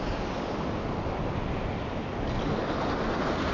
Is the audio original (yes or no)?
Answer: yes